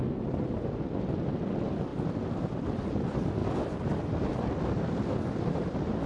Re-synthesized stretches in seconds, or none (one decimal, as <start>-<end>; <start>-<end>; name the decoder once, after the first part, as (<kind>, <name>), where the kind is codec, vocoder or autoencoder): 1.9-2.9 (vocoder, BigVGAN v2); 3.4-4.6